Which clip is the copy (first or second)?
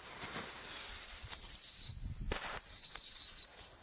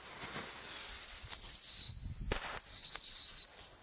first